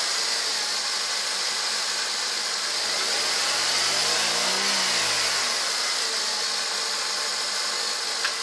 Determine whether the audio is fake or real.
real